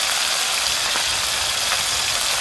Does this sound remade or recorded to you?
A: recorded